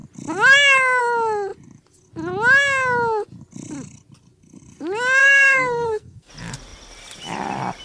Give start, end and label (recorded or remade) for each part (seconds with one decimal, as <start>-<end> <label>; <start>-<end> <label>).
0.0-5.2 recorded; 5.2-6.3 remade; 6.3-7.8 recorded